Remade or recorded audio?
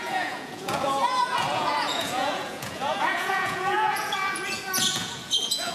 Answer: remade